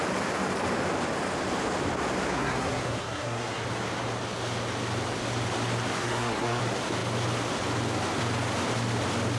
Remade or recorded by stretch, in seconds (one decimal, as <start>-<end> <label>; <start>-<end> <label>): 0.0-2.3 recorded; 2.3-3.6 remade; 3.6-6.0 recorded; 6.0-6.6 remade; 6.6-9.4 recorded